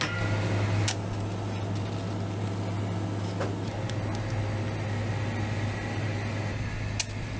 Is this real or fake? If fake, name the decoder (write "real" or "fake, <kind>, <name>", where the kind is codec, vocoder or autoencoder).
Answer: real